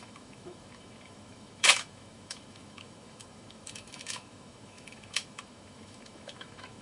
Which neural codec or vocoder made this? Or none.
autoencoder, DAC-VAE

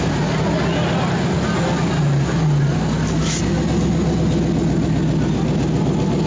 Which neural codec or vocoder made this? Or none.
none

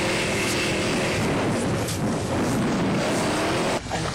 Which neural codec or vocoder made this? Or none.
none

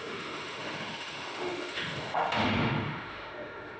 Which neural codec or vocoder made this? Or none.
autoencoder, DAC-VAE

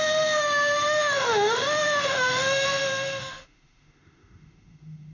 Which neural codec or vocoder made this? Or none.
autoencoder, DAC-VAE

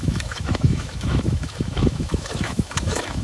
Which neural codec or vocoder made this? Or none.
autoencoder, DAC-VAE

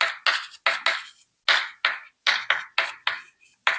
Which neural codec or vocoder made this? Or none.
none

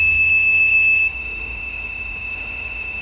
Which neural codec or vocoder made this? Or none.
autoencoder, DAC-VAE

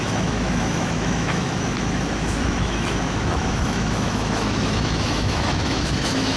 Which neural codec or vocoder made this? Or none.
autoencoder, DAC-VAE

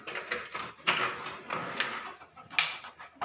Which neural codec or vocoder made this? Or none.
none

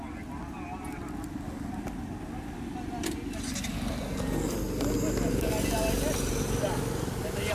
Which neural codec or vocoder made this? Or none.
none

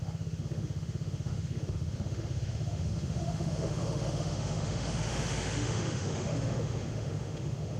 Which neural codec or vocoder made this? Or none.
autoencoder, DAC-VAE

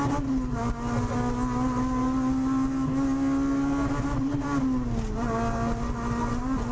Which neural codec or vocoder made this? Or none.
none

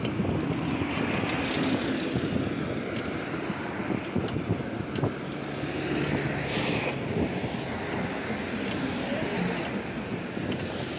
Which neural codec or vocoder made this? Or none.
none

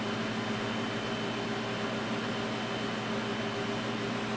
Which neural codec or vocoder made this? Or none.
none